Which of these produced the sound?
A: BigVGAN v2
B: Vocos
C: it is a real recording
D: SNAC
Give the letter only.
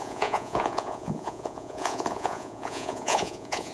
B